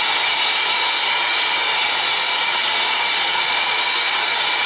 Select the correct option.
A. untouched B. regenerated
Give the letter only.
A